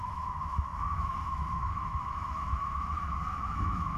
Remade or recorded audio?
remade